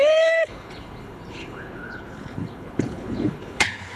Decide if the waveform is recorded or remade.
remade